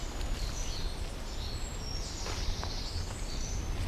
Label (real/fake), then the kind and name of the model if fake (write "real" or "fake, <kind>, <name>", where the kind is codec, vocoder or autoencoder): real